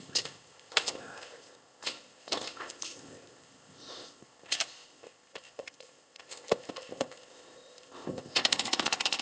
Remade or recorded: remade